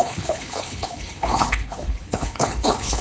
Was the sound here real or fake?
fake